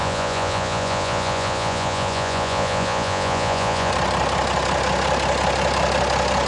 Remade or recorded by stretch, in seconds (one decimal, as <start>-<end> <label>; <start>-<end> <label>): 0.0-3.9 remade; 3.9-6.5 recorded